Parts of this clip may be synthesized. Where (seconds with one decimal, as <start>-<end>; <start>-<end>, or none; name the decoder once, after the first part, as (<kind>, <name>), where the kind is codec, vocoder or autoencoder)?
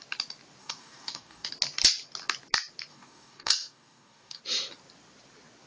0.6-1.5 (codec, DAC); 2.9-4.4